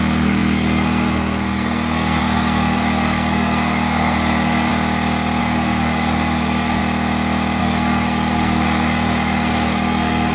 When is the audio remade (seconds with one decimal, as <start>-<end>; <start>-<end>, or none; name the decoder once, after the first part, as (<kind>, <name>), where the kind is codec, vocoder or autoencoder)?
0.0-4.7 (codec, SNAC); 5.4-6.8; 7.6-10.3